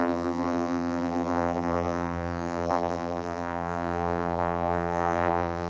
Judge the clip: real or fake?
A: fake